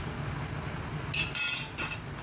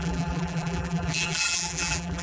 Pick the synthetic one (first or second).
second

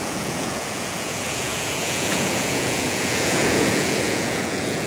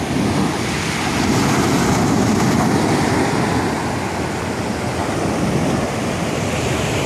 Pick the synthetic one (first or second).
first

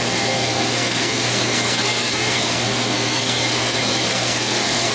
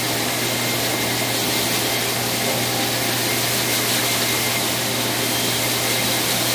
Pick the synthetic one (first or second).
first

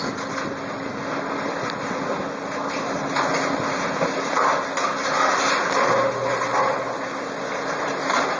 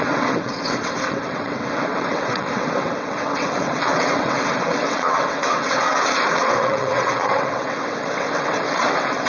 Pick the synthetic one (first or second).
second